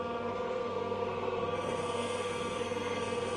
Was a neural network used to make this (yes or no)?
yes